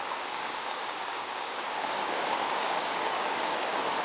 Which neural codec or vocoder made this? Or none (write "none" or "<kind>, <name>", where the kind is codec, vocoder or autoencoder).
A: codec, DAC